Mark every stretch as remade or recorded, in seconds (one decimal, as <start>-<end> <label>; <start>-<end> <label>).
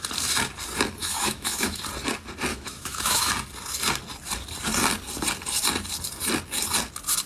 0.0-1.0 recorded; 1.0-1.8 remade; 1.8-2.5 recorded; 2.5-3.3 remade; 3.3-7.3 recorded